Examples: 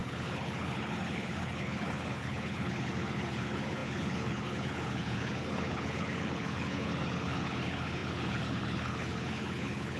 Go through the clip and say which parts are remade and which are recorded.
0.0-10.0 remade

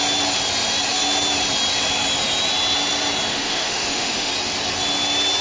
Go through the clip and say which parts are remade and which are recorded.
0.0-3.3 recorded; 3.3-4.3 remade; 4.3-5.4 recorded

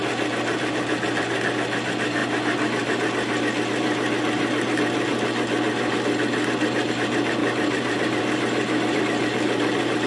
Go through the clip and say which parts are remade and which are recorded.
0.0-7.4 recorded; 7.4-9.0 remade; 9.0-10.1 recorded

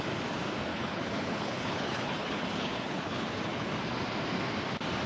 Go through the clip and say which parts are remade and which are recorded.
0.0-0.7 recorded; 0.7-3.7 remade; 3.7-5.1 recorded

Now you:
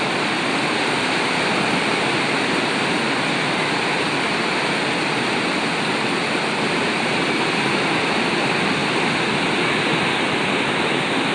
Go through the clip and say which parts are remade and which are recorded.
0.0-8.8 remade; 8.8-10.8 recorded; 10.8-11.3 remade

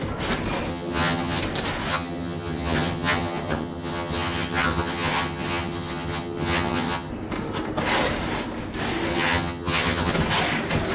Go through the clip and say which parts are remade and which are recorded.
0.0-0.7 recorded; 0.7-1.4 remade; 1.4-1.9 recorded; 1.9-7.1 remade; 7.1-9.1 recorded; 9.1-10.1 remade; 10.1-10.9 recorded